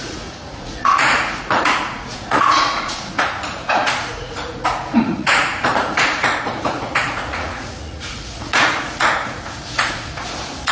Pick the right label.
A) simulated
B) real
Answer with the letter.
A